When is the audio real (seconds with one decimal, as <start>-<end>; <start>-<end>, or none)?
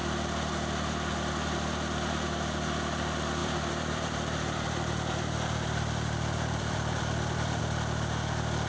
0.0-3.4; 7.6-8.7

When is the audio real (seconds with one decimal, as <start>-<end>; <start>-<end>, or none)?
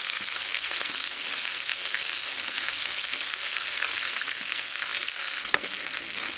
none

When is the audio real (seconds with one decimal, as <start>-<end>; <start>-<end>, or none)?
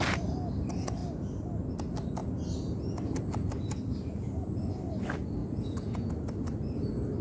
0.0-5.4; 6.1-7.2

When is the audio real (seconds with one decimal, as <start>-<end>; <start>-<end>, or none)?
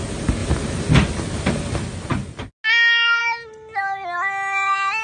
0.0-5.0